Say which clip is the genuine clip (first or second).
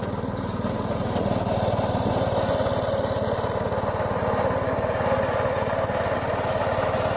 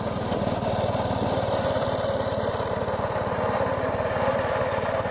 first